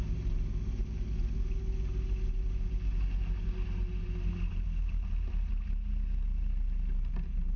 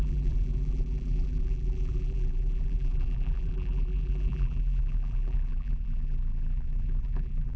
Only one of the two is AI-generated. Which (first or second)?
second